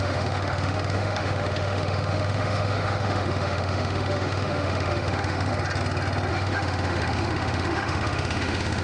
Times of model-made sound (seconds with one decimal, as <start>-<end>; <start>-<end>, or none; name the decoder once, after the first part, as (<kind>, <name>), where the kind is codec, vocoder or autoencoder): 0.0-5.5 (autoencoder, DAC-VAE); 6.3-8.8

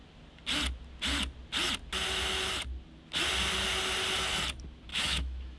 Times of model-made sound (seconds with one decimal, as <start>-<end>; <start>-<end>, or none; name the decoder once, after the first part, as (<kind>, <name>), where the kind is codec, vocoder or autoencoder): 4.9-5.6 (autoencoder, DAC-VAE)

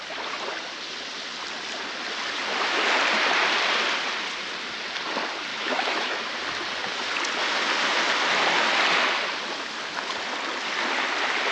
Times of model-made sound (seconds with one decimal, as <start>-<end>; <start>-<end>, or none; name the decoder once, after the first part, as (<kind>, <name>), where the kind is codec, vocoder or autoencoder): 5.5-6.3 (autoencoder, DAC-VAE)

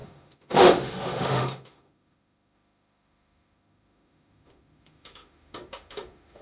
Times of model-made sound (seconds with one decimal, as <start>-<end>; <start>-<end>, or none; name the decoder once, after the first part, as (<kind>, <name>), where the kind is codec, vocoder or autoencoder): 0.0-6.4 (autoencoder, DAC-VAE)

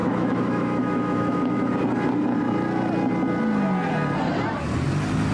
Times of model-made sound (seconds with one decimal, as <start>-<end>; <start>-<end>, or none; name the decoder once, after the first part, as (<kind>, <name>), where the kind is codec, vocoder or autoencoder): 0.0-1.7 (autoencoder, DAC-VAE)